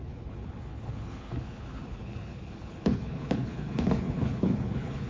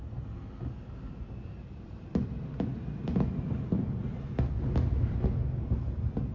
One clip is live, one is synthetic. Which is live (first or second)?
second